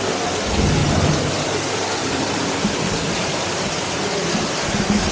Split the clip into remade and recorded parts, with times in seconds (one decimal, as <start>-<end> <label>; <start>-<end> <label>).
0.0-0.8 remade; 0.8-1.3 recorded; 1.3-5.1 remade